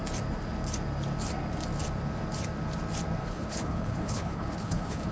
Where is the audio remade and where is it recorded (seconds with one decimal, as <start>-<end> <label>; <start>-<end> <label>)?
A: 0.0-3.2 recorded; 3.2-5.1 remade